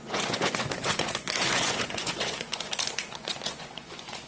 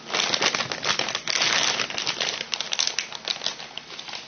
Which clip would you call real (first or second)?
second